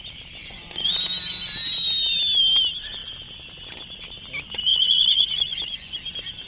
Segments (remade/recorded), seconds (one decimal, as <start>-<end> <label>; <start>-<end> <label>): 0.0-0.4 recorded; 0.4-1.0 remade; 1.0-4.7 recorded; 4.7-5.9 remade; 5.9-6.5 recorded